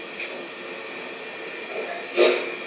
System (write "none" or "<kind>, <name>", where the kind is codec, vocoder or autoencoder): none